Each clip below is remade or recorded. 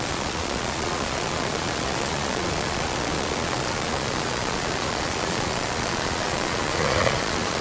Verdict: remade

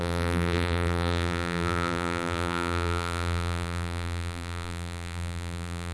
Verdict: remade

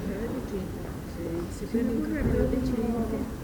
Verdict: remade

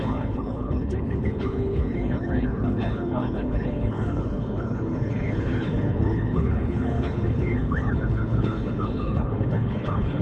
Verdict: remade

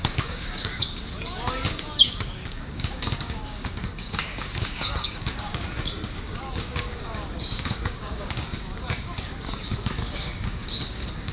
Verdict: remade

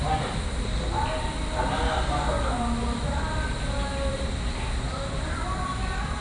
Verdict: recorded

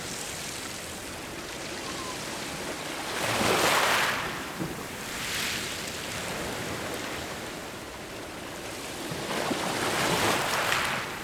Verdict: recorded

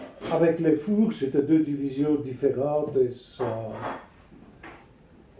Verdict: recorded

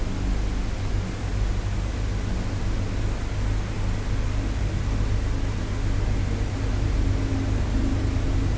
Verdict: recorded